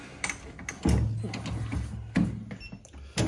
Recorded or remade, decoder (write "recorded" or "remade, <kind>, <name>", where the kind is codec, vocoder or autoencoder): recorded